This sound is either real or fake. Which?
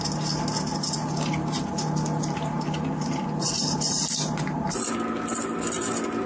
real